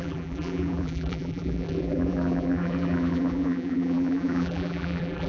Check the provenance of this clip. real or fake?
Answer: fake